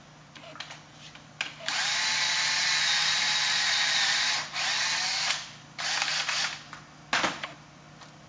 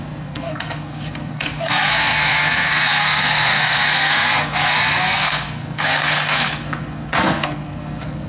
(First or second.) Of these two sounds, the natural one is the first